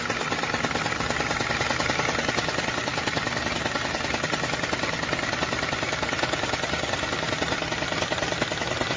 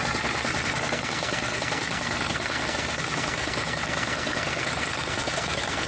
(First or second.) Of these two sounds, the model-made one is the second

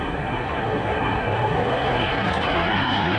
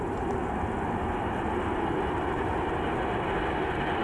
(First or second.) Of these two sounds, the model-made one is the first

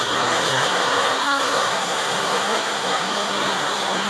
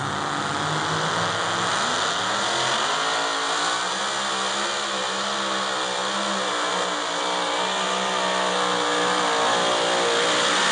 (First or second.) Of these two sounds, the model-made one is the first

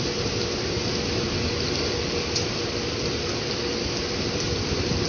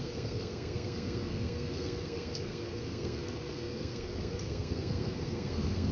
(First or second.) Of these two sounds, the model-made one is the second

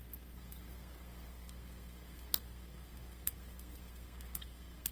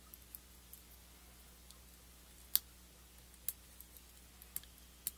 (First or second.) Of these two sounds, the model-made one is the first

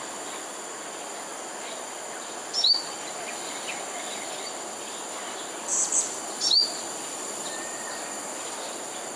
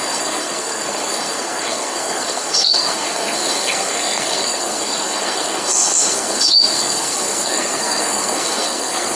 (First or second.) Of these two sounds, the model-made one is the second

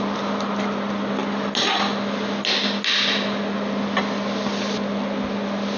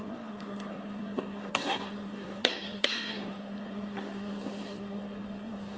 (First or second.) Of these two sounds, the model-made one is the second